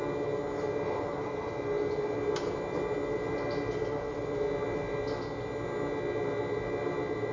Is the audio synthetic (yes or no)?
no